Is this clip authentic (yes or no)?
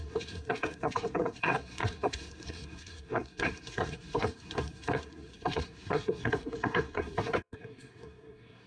no